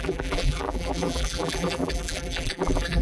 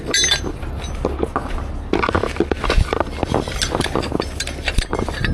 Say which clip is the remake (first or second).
first